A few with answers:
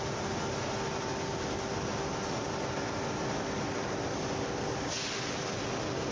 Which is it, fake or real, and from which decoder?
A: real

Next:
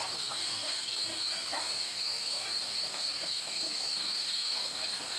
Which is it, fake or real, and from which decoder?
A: fake, codec, DAC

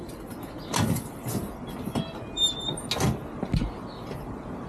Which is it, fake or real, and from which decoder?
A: real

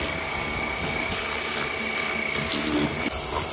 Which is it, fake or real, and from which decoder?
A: real